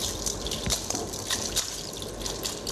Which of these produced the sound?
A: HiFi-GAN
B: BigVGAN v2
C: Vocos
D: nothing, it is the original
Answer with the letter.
D